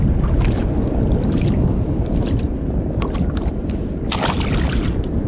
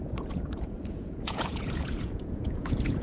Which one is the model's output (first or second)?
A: second